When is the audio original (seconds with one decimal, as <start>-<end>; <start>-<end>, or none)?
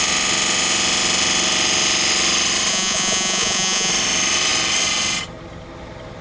0.0-2.7; 3.9-6.2